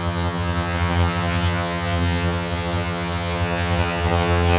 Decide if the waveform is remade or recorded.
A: remade